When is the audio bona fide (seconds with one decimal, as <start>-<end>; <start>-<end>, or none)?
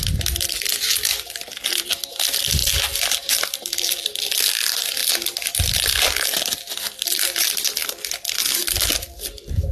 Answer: 0.0-9.7